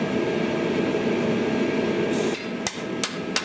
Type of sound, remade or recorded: recorded